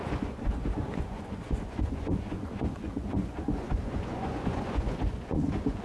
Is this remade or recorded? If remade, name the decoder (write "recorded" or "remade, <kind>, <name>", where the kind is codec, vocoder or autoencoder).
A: remade, vocoder, Vocos